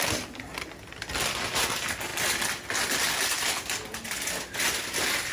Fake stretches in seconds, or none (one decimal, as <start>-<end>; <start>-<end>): none